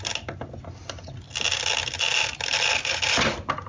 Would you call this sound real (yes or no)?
yes